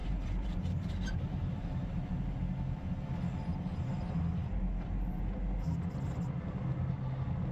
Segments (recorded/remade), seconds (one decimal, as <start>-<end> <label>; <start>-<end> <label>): 0.0-2.1 remade; 2.1-3.5 recorded; 3.5-4.1 remade; 4.1-7.5 recorded